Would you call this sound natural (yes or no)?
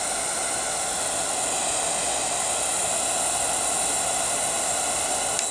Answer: yes